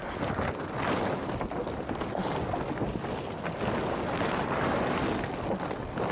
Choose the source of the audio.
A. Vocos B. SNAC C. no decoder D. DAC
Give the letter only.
C